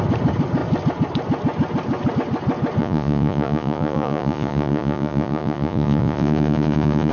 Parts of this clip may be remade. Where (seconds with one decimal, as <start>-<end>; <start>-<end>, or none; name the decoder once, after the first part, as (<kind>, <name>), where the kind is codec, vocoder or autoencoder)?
2.8-7.1 (vocoder, Vocos)